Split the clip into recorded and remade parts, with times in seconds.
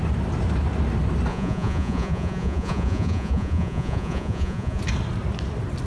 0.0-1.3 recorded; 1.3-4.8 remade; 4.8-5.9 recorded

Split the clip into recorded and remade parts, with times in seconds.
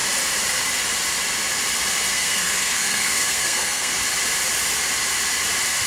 0.0-2.1 recorded; 2.1-3.9 remade; 3.9-5.9 recorded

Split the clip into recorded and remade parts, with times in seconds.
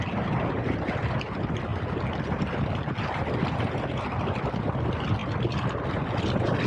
0.0-6.7 recorded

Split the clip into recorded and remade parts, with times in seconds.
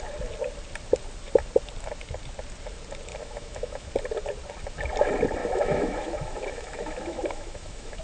0.0-3.1 recorded; 3.1-3.9 remade; 3.9-5.4 recorded; 5.4-8.0 remade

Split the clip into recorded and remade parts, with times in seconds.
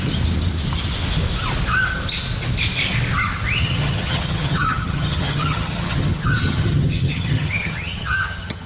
0.0-3.6 recorded; 3.6-8.7 remade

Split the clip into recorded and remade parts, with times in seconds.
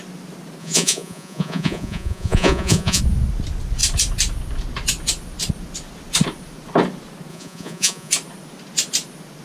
0.0-0.6 recorded; 0.6-3.0 remade; 3.0-7.3 recorded; 7.3-8.1 remade; 8.1-9.4 recorded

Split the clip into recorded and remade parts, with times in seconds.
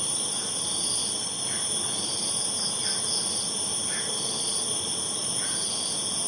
0.0-5.2 recorded; 5.2-6.3 remade